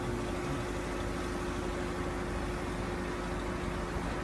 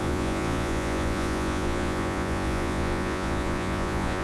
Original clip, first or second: first